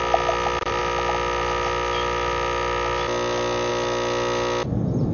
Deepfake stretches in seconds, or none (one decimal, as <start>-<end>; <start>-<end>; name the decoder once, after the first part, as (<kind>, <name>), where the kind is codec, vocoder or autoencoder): none